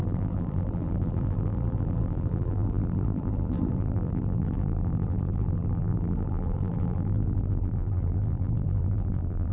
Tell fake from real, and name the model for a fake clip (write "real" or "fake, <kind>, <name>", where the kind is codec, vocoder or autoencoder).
fake, vocoder, BigVGAN v2